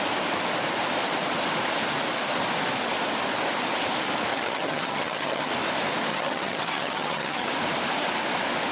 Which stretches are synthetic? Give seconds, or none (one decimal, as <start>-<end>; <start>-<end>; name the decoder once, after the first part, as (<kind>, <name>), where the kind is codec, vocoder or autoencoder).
4.3-5.5 (vocoder, HiFi-GAN); 6.1-7.5

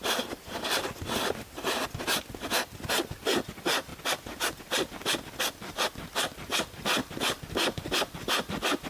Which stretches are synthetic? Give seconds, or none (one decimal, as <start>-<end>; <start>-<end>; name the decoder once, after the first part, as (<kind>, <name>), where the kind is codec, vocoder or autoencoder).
none

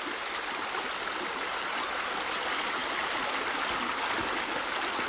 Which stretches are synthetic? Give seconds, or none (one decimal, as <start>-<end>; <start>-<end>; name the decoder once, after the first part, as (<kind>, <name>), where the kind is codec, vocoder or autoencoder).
none

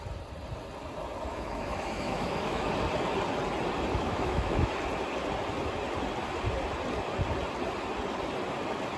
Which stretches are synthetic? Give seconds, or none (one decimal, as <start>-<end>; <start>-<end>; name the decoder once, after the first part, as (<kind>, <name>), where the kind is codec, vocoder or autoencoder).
1.3-2.7 (autoencoder, DAC-VAE); 3.9-4.7

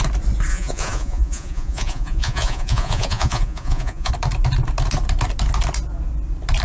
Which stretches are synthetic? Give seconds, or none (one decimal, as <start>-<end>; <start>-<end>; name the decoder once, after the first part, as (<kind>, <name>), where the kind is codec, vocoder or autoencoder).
0.5-4.1 (vocoder, Vocos)

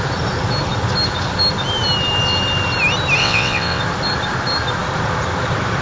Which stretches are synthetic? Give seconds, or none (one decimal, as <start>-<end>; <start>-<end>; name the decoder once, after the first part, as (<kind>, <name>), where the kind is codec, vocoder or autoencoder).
3.2-3.8 (vocoder, WaveNeXt)